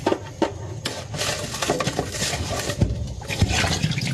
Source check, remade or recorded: recorded